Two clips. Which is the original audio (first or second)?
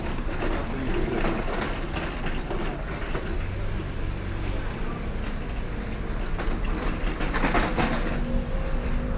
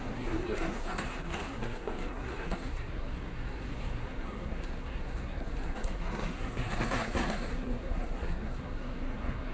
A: first